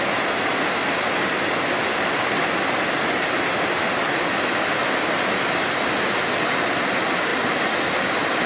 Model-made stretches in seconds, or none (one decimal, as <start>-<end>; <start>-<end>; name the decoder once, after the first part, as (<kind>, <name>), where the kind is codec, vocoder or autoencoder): none